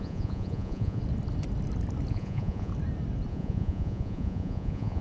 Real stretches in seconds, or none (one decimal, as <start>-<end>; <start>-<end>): 1.0-2.1; 2.7-3.3